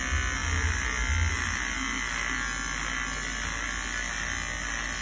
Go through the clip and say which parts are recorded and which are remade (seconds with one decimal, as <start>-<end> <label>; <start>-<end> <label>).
0.0-5.0 recorded